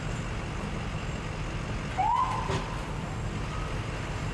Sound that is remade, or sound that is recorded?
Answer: recorded